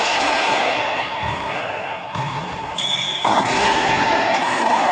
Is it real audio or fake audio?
fake